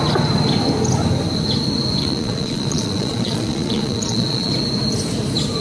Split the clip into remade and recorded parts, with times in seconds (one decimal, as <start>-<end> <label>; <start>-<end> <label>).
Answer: 0.0-2.0 recorded; 2.0-4.5 remade; 4.5-5.6 recorded